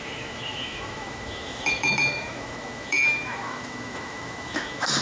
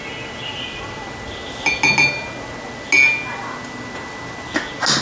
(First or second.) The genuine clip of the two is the second